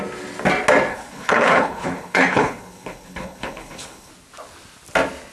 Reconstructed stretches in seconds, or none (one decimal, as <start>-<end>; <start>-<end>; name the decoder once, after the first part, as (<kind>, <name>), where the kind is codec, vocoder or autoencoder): 0.9-4.1 (codec, HILCodec)